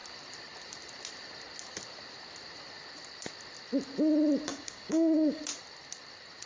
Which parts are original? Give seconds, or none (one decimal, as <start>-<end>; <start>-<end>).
0.0-4.5; 5.4-6.5